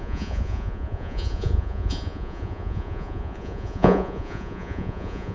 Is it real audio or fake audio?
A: fake